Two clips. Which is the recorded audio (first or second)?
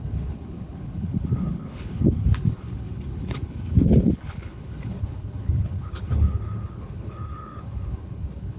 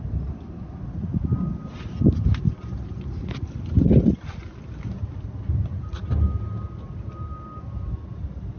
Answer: second